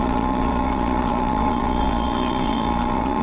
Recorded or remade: remade